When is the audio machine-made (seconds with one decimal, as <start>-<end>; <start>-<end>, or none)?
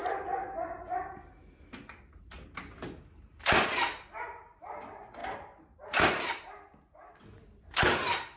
none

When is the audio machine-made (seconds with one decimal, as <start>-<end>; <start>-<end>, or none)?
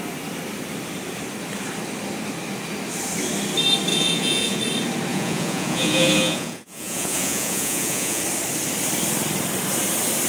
3.9-4.6; 5.1-8.2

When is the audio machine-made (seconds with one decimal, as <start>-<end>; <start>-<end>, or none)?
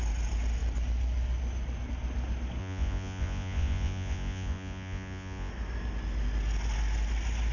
2.6-5.5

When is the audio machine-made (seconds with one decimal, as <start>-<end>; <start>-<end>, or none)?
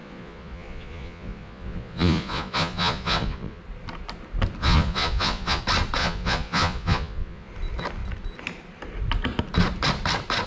0.0-3.6; 4.6-5.6; 6.0-7.5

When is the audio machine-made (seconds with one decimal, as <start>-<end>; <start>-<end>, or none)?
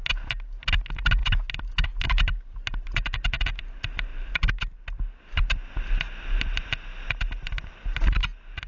none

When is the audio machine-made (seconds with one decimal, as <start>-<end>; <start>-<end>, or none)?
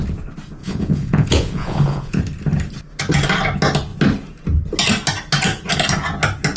0.6-2.2